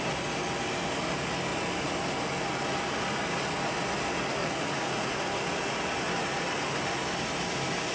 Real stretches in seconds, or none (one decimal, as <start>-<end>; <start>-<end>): 0.0-4.4; 5.3-7.9